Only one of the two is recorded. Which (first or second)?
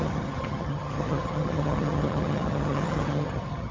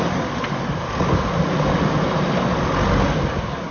second